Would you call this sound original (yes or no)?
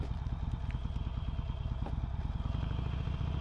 yes